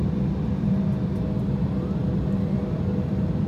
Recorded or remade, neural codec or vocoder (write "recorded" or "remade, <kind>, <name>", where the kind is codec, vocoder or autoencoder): recorded